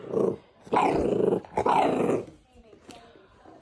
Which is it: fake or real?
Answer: real